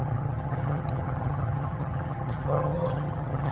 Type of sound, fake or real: fake